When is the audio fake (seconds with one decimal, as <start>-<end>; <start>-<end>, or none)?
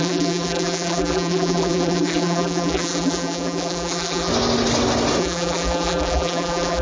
0.0-4.3; 5.2-6.8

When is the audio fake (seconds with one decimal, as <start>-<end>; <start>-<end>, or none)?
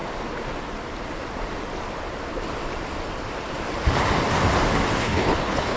5.0-5.8